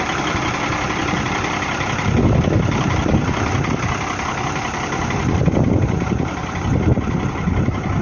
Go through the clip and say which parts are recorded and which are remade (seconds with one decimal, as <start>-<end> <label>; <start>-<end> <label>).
0.0-8.0 remade

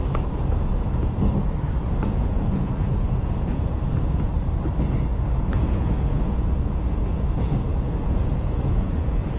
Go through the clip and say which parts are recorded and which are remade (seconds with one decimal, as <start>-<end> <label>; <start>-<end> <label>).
0.0-2.0 recorded; 2.0-4.3 remade; 4.3-5.3 recorded; 5.3-9.4 remade

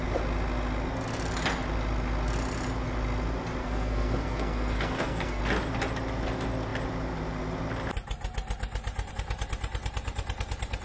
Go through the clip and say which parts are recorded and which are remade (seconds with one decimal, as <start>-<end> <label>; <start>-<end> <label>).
0.0-3.6 recorded; 3.6-5.4 remade; 5.4-10.8 recorded

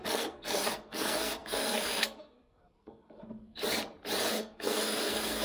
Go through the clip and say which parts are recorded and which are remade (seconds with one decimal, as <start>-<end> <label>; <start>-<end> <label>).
0.0-3.6 remade; 3.6-4.3 recorded; 4.3-5.4 remade

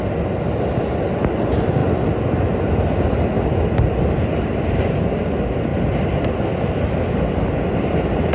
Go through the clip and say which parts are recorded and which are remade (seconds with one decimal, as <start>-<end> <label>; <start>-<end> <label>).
0.0-8.3 recorded

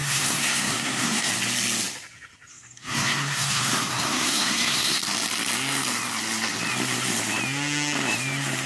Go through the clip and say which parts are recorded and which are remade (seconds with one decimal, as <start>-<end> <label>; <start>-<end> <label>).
0.0-1.3 remade; 1.3-2.5 recorded; 2.5-5.0 remade; 5.0-8.7 recorded

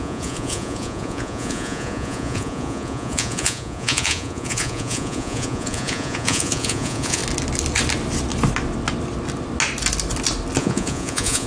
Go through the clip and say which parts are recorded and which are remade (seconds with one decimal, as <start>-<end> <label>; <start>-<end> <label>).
0.0-7.2 remade; 7.2-10.6 recorded; 10.6-11.5 remade